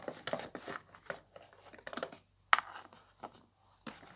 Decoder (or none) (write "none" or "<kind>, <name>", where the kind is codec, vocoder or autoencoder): none